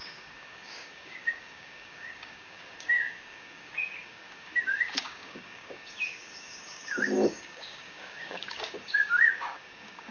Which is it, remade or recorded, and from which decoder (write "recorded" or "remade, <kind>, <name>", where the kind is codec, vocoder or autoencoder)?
remade, codec, DAC